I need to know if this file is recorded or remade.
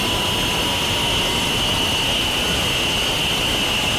recorded